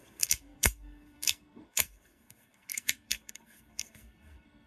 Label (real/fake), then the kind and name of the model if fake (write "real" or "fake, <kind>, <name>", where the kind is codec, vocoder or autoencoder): fake, codec, SNAC